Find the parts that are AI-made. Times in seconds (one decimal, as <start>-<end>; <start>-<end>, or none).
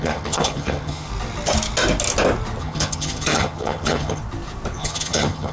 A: 0.0-1.1; 2.6-4.2; 4.8-5.5